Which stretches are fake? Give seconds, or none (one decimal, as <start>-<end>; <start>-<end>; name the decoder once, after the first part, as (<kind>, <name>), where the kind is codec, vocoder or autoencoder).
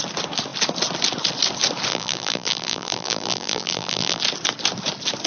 1.9-4.2 (vocoder, BigVGAN v2)